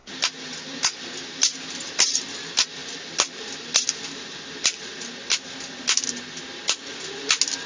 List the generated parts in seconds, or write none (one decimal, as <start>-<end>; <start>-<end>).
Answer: none